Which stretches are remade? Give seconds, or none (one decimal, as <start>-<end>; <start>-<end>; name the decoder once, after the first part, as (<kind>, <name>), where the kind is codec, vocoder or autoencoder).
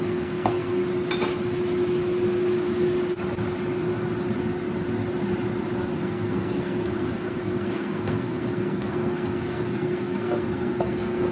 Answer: 0.0-0.8 (codec, SNAC); 6.0-11.3